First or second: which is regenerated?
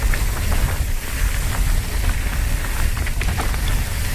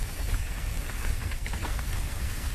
second